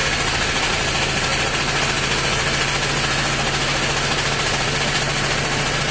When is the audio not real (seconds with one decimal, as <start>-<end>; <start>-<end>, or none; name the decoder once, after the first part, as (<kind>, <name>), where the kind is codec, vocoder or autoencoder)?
none